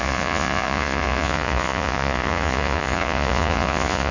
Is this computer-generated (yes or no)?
yes